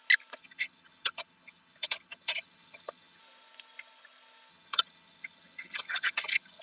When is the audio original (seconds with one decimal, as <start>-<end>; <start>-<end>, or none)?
0.0-0.4; 3.2-4.5